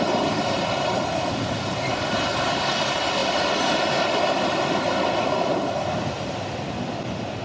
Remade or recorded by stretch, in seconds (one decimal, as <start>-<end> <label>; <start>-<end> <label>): 0.0-7.4 remade